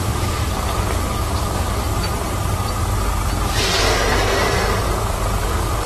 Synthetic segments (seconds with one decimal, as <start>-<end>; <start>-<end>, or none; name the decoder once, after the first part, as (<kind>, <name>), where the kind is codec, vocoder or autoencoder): 0.0-1.9 (codec, DAC); 5.4-5.9